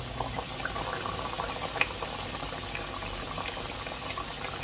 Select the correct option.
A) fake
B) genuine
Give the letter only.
B